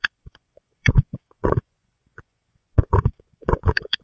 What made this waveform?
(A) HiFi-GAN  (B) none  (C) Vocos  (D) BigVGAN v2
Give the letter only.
C